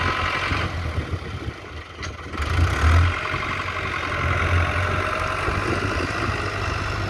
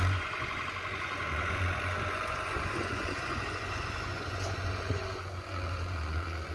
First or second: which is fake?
second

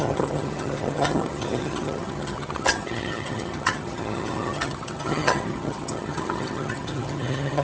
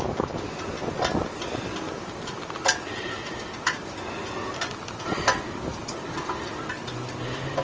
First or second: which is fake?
first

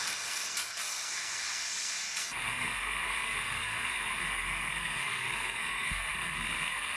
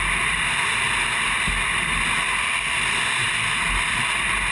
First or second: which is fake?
first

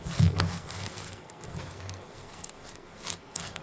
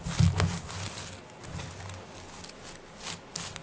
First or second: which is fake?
first